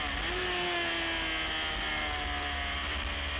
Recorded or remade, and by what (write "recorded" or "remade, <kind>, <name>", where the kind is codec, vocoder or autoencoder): recorded